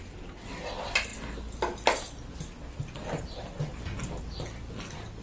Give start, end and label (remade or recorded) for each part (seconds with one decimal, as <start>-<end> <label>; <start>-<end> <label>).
0.0-5.2 recorded